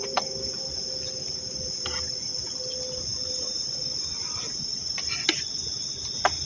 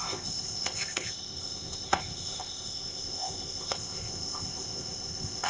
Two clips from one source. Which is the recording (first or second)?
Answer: first